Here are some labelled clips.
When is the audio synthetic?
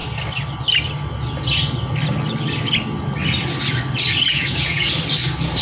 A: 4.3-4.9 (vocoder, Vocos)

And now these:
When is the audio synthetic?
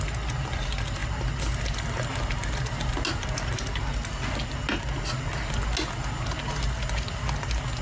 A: none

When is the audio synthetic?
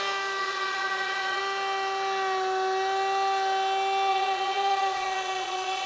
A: 0.4-1.4 (vocoder, Vocos); 4.1-5.9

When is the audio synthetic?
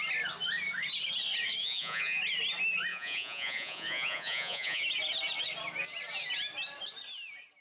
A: 1.6-2.2 (vocoder, Vocos); 2.9-4.8